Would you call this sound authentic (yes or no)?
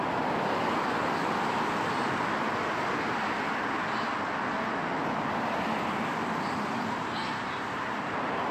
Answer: yes